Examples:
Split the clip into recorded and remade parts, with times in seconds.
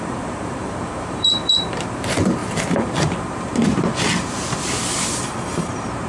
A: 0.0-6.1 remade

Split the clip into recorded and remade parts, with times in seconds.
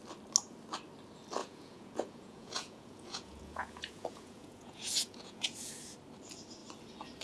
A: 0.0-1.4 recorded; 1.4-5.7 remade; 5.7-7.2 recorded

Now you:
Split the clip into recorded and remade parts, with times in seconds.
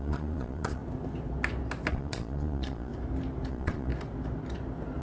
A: 0.0-0.8 remade; 0.8-1.9 recorded; 1.9-2.9 remade; 2.9-3.5 recorded; 3.5-3.9 remade; 3.9-5.0 recorded